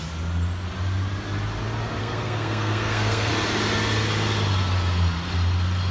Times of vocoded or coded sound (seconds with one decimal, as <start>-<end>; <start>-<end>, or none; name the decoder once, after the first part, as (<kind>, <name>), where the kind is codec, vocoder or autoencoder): 2.0-3.3 (codec, SNAC)